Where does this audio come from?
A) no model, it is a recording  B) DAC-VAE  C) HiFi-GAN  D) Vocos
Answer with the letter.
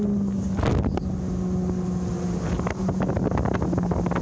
A